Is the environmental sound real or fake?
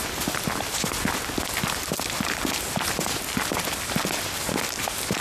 real